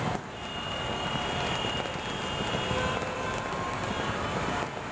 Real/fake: real